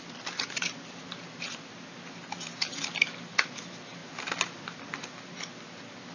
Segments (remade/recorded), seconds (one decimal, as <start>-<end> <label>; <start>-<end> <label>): 0.0-6.1 recorded